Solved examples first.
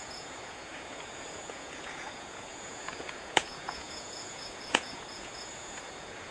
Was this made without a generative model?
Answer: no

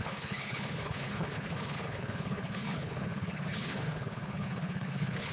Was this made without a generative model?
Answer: no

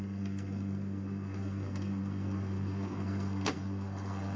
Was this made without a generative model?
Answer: no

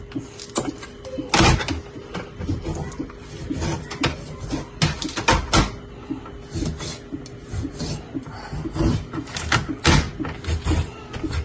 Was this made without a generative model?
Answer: yes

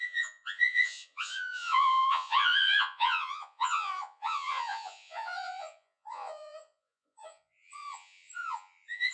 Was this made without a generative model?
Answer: no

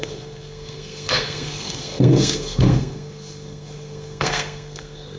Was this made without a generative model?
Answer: no